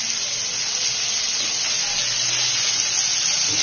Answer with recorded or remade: recorded